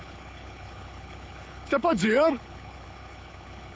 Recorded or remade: remade